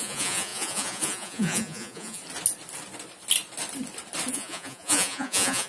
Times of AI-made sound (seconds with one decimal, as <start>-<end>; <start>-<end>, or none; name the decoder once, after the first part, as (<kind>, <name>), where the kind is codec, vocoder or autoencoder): 0.0-2.2 (vocoder, Vocos); 4.3-5.7